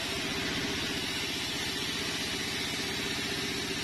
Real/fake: real